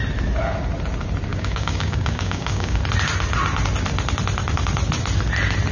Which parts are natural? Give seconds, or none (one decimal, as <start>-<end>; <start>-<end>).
0.0-1.3; 2.8-5.7